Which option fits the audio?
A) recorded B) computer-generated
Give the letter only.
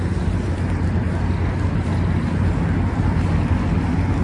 A